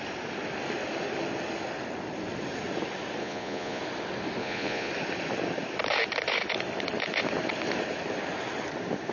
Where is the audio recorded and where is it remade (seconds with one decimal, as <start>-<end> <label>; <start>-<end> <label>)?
0.0-3.2 recorded; 3.2-3.8 remade; 3.8-4.4 recorded; 4.4-4.9 remade; 4.9-9.1 recorded